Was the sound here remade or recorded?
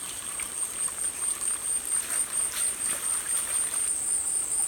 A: remade